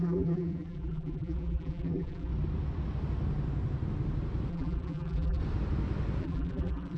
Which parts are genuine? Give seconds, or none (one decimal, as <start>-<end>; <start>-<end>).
2.3-4.5; 5.4-6.2